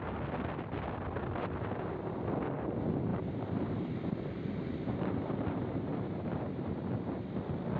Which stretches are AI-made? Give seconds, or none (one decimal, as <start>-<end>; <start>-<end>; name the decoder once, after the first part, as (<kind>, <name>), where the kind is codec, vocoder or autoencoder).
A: 3.1-6.8 (vocoder, BigVGAN v2)